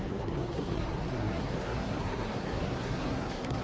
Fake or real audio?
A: fake